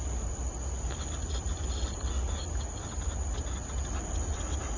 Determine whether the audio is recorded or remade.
recorded